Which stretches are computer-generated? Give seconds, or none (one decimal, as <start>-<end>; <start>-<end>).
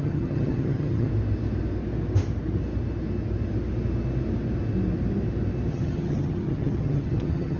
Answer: 0.0-1.1; 5.7-7.6